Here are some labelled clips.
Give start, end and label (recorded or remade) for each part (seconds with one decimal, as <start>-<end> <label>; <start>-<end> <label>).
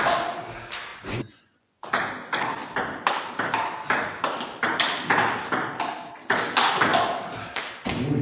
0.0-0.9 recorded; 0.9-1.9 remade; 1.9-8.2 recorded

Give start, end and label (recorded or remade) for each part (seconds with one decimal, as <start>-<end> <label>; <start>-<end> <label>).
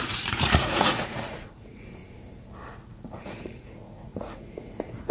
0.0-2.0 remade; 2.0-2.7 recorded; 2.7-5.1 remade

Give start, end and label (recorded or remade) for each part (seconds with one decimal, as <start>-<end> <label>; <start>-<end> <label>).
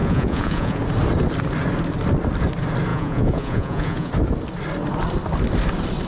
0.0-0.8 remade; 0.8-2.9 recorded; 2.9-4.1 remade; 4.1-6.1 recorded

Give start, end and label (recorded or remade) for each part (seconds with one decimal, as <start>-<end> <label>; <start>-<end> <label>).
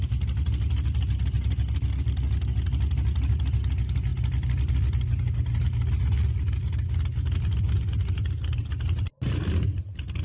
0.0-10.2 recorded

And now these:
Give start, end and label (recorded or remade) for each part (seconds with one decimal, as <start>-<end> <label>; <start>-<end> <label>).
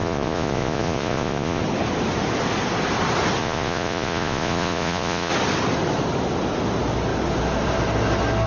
0.0-1.6 remade; 1.6-3.4 recorded; 3.4-5.3 remade; 5.3-8.5 recorded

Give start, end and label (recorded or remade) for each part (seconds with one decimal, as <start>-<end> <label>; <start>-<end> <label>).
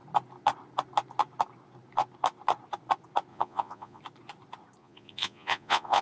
0.0-3.3 recorded; 3.3-4.0 remade; 4.0-4.8 recorded; 4.8-6.0 remade